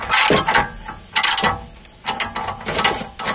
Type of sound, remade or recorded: recorded